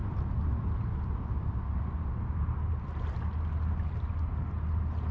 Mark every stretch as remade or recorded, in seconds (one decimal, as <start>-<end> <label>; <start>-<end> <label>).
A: 0.0-5.1 recorded